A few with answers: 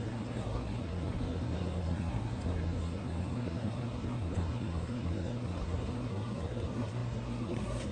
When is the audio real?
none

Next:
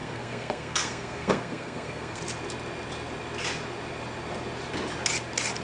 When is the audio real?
2.2-5.6

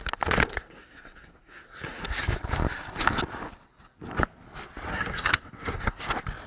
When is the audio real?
0.0-0.5; 2.2-4.9; 6.0-6.5

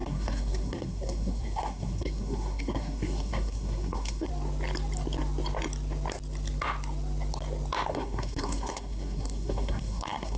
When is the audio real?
4.3-7.9

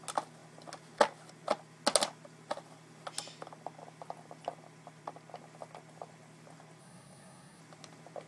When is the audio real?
0.0-6.8; 7.6-8.3

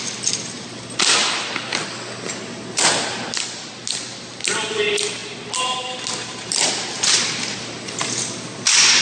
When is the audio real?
0.0-9.0

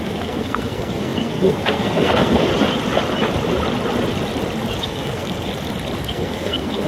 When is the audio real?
2.5-4.7; 5.5-6.0

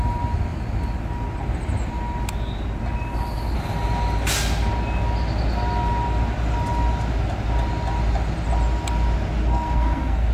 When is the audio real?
0.0-9.4